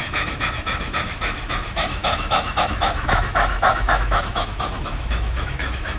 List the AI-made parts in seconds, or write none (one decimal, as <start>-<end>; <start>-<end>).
0.0-6.0